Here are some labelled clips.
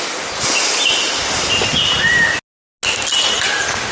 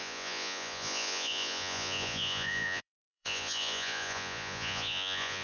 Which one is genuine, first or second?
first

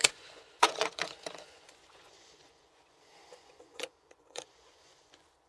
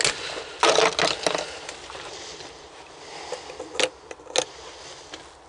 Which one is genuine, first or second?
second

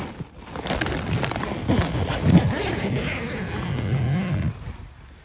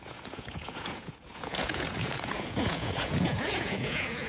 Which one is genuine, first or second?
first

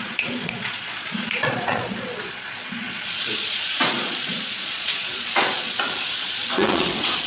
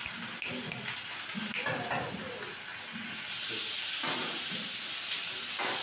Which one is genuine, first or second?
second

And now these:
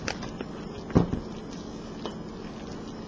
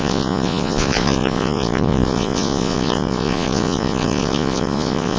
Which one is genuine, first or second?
first